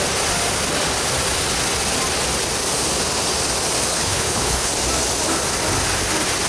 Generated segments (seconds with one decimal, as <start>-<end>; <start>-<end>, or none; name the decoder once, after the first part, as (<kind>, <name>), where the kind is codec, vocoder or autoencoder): 3.9-4.7 (codec, HILCodec)